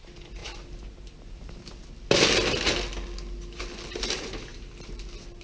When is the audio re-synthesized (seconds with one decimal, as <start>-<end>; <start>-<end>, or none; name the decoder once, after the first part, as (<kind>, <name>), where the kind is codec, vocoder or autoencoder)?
none